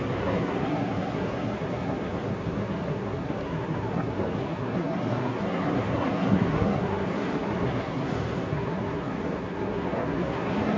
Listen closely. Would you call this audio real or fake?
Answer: fake